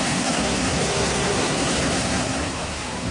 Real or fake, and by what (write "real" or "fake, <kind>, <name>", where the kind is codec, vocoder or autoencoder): fake, codec, SNAC